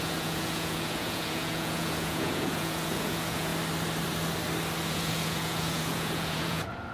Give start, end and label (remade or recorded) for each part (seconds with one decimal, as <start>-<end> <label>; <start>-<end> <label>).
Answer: 0.0-3.5 remade; 3.5-4.9 recorded; 4.9-6.9 remade